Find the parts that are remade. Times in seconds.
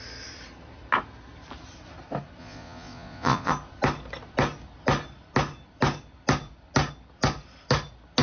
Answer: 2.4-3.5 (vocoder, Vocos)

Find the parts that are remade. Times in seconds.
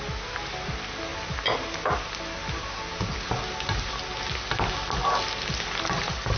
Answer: none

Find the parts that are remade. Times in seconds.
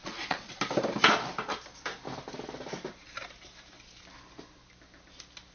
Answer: 0.0-0.6 (vocoder, Vocos)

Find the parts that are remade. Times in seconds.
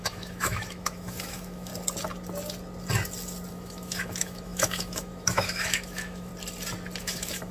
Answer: 0.0-1.7 (autoencoder, DAC-VAE); 3.5-6.3; 7.0-7.5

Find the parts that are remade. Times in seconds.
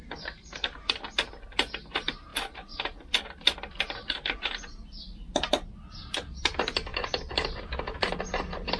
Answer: 6.9-8.2 (vocoder, BigVGAN v2)